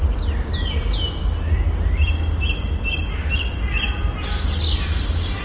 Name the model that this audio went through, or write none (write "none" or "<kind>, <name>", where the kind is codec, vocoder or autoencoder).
none